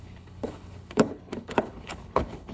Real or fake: fake